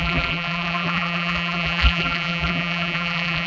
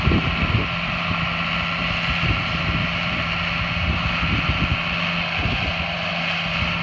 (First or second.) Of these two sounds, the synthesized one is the first